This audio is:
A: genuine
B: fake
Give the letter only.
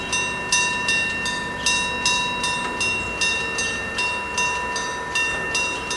A